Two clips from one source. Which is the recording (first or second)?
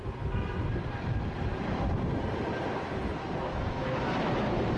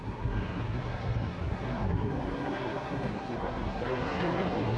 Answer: first